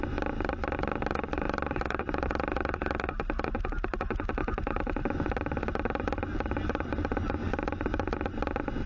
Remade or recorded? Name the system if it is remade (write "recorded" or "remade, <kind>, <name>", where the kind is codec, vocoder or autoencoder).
recorded